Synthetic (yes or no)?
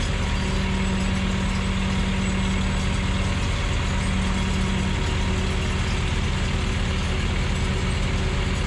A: no